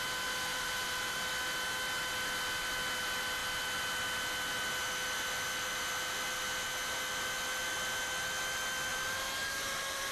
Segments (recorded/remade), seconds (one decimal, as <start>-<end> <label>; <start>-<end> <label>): 0.0-0.5 recorded; 0.5-1.3 remade; 1.3-8.9 recorded; 8.9-10.1 remade